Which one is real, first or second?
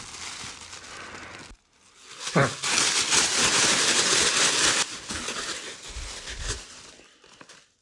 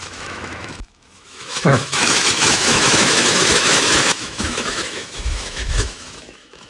first